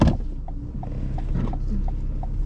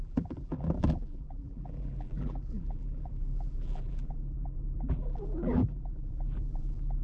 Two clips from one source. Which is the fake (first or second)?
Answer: second